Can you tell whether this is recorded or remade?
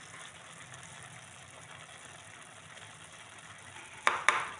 recorded